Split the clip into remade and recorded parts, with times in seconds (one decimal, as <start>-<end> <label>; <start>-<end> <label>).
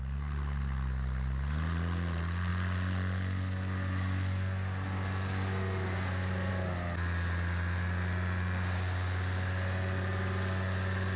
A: 0.0-11.2 recorded